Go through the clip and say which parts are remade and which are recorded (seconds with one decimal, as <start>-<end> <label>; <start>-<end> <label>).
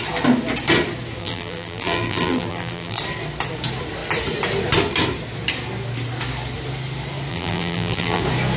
0.0-1.2 recorded; 1.2-3.0 remade; 3.0-7.3 recorded; 7.3-8.2 remade; 8.2-8.6 recorded